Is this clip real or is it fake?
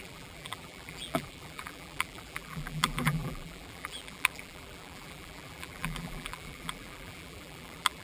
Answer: fake